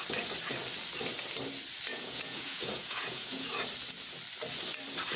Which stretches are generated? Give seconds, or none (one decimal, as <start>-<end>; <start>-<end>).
1.9-3.5